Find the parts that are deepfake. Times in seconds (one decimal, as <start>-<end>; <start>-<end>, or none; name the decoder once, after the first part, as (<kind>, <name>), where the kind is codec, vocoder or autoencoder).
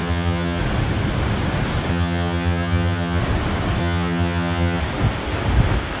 0.0-0.6 (vocoder, HiFi-GAN); 1.9-3.2; 3.8-4.8